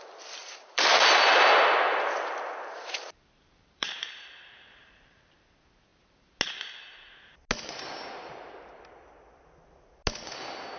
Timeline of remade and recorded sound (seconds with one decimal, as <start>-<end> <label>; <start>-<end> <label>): 0.0-0.4 recorded; 0.4-5.4 remade; 5.4-10.8 recorded

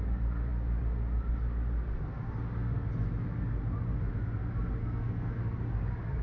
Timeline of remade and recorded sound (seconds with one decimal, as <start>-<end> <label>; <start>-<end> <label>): 0.0-4.8 recorded; 4.8-5.3 remade; 5.3-6.2 recorded

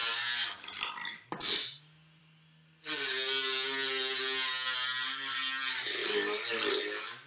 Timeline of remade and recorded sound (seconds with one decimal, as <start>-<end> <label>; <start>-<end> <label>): 0.0-7.3 recorded

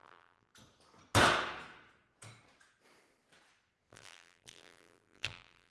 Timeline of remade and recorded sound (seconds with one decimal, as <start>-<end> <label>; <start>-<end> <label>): 0.0-0.5 remade; 0.5-3.9 recorded; 3.9-5.7 remade

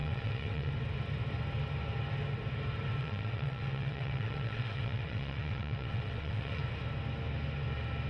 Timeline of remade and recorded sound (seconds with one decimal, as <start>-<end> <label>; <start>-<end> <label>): 0.0-0.7 remade; 0.7-3.0 recorded; 3.0-6.6 remade; 6.6-8.1 recorded

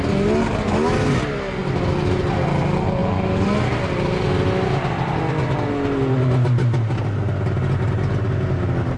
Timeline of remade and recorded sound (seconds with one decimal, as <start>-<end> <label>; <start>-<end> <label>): 0.0-9.0 recorded

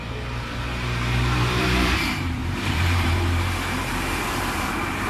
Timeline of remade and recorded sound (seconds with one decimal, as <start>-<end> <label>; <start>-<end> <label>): 0.0-5.1 remade

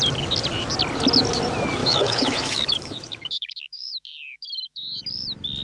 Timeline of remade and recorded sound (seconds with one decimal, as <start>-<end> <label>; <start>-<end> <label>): 0.0-1.8 recorded; 1.8-5.0 remade; 5.0-5.6 recorded